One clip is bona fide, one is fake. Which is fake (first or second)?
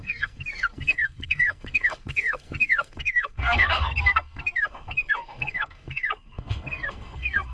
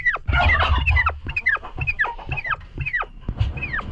first